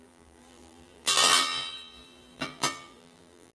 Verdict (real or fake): fake